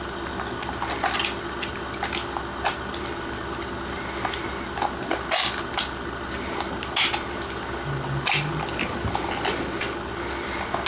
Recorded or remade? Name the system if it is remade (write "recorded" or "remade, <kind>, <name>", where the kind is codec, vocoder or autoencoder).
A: recorded